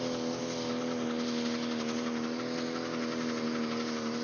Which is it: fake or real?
real